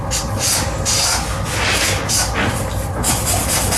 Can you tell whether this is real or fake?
real